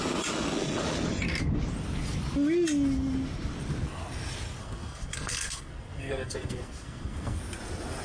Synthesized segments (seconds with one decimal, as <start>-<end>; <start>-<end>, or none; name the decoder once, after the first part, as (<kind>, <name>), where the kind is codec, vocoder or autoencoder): 4.6-7.4 (codec, SNAC)